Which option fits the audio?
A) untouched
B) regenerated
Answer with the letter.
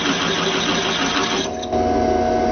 A